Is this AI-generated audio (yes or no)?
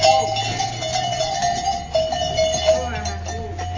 no